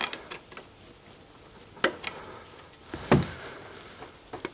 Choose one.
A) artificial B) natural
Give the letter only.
B